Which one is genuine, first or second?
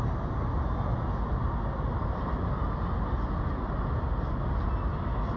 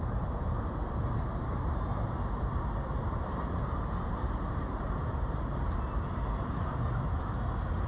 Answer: first